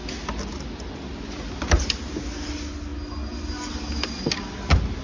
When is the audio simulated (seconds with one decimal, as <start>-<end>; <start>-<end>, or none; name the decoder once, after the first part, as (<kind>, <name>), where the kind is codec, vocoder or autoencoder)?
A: none